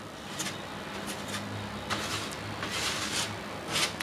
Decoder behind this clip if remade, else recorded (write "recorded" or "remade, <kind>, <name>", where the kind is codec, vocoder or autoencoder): recorded